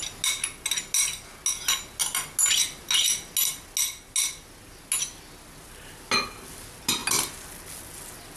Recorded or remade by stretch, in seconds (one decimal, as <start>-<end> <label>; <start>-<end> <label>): 0.0-8.4 recorded